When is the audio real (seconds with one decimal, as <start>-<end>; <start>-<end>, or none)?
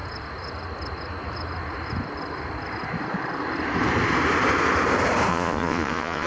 0.0-5.3